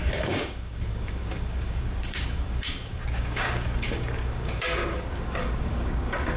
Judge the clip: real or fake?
fake